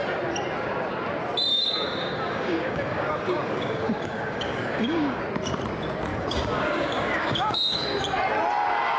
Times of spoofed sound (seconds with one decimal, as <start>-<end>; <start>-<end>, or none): 1.5-5.2; 6.1-8.0

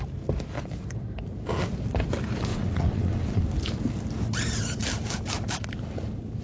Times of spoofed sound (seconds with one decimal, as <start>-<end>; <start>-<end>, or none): 2.5-3.4